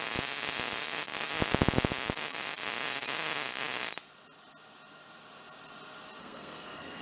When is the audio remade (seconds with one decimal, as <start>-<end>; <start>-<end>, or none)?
6.2-7.0

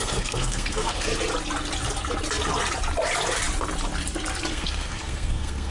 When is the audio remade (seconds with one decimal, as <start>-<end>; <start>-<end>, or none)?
0.0-1.1; 4.5-5.7